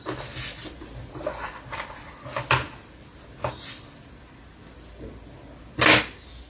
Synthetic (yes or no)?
no